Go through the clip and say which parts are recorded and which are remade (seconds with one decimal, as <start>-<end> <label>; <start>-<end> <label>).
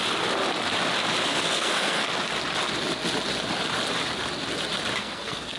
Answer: 0.0-1.3 recorded; 1.3-2.1 remade; 2.1-5.0 recorded; 5.0-5.6 remade